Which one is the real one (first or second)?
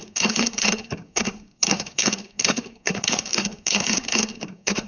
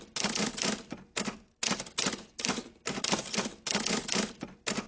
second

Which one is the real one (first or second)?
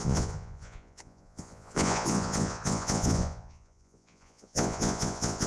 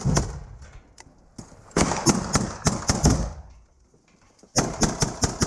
second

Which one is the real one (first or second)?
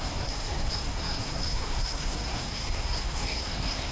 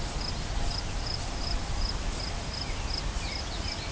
second